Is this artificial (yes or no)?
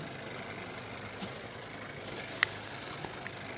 no